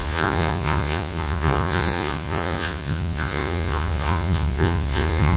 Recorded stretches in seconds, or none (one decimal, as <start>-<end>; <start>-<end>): none